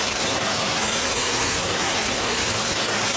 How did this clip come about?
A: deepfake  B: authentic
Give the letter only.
A